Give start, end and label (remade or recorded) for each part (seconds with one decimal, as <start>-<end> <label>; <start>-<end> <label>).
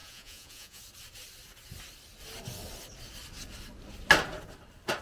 0.0-0.8 remade; 0.8-5.0 recorded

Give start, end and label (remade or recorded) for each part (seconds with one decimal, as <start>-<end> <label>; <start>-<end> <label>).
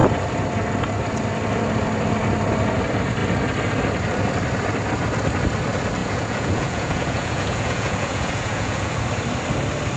0.0-6.0 recorded; 6.0-9.0 remade; 9.0-10.0 recorded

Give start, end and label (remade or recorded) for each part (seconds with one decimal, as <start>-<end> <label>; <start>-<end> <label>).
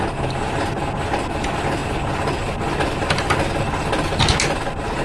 0.0-5.0 recorded